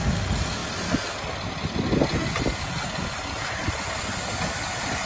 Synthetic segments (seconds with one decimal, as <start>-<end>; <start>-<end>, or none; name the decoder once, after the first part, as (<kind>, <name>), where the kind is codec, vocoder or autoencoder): none